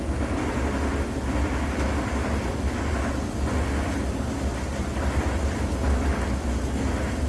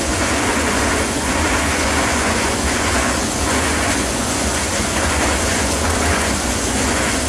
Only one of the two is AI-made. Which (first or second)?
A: second